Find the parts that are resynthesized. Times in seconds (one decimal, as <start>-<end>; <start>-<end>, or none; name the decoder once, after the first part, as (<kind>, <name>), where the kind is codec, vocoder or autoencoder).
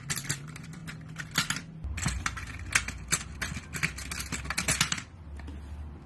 none